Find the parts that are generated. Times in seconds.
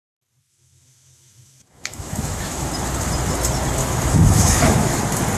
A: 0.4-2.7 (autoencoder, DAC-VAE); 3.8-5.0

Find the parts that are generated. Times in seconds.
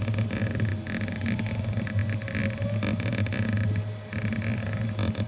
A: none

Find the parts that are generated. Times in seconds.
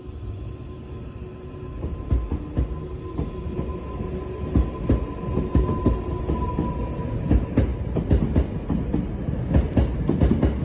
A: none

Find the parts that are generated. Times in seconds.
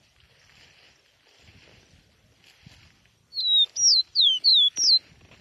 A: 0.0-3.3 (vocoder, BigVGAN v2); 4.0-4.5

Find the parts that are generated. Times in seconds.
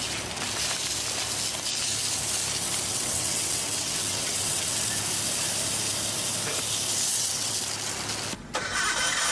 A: 2.9-4.9 (vocoder, WaveNeXt); 7.1-7.6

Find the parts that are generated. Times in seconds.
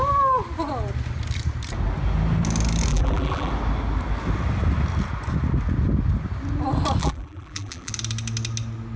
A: 2.9-3.5 (vocoder, BigVGAN v2); 7.0-7.9